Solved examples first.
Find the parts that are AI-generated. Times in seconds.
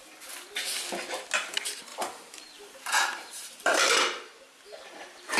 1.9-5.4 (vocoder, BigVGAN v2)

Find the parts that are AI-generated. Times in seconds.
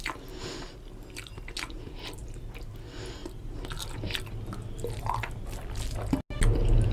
none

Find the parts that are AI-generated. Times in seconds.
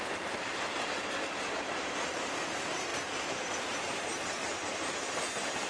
none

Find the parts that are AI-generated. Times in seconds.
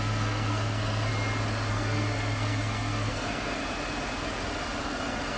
0.0-1.1 (codec, SNAC); 1.7-3.6; 4.8-5.4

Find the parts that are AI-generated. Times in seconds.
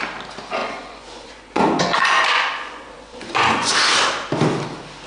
0.6-3.7 (vocoder, Vocos)